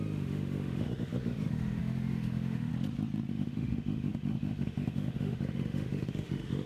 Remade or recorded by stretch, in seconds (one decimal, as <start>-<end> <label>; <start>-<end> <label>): 0.0-2.7 remade; 2.7-3.3 recorded; 3.3-6.7 remade